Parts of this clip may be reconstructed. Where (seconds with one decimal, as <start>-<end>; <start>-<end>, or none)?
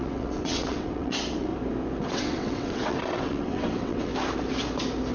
0.0-1.5; 2.0-4.1